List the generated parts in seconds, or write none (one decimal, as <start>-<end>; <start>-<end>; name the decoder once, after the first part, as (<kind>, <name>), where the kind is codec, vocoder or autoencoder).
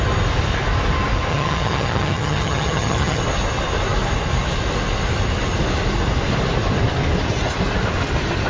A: 1.3-3.2 (vocoder, HiFi-GAN)